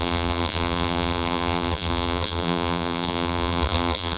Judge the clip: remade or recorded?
remade